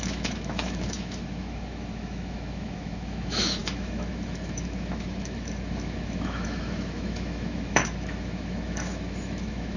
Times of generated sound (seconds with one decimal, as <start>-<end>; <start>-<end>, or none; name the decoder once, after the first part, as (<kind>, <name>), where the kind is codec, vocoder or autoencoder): 0.0-9.8 (autoencoder, DAC-VAE)